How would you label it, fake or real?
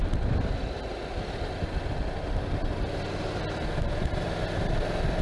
real